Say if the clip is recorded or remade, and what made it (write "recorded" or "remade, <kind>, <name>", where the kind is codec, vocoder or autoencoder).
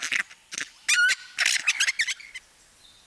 recorded